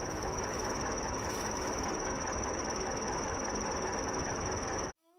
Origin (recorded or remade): remade